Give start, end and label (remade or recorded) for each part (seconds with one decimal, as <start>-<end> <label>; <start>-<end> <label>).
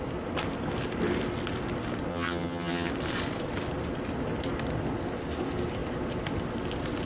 0.0-2.1 recorded; 2.1-2.9 remade; 2.9-7.1 recorded